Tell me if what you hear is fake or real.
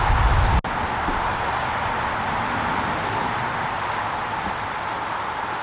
real